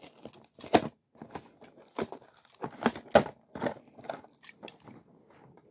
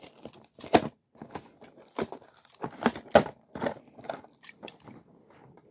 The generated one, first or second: second